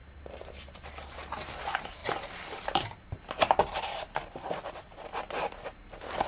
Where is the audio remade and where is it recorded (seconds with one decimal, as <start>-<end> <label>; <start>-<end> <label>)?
0.0-6.3 recorded